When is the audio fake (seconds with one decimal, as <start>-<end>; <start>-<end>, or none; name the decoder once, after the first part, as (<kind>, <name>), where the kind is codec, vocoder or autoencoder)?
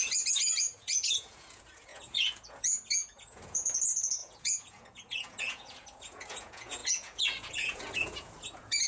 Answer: 0.0-8.9 (vocoder, Vocos)